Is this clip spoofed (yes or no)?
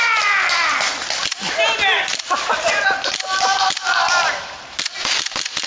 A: no